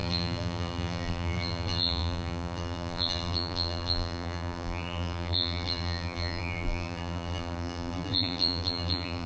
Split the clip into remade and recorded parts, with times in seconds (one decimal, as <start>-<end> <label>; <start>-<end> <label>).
0.0-9.3 remade